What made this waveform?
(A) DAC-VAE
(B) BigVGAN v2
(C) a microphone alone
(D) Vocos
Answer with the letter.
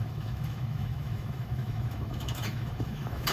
A